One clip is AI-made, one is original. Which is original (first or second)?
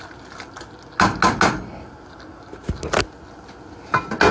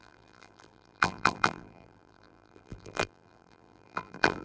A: first